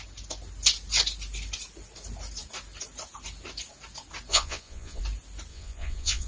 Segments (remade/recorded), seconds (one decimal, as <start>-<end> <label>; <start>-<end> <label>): 0.0-4.3 recorded; 4.3-5.0 remade; 5.0-5.5 recorded; 5.5-6.3 remade